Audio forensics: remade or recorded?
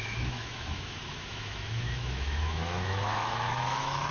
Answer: remade